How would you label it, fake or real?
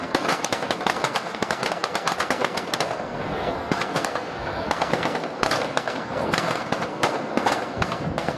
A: fake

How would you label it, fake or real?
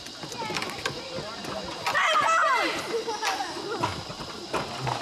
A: real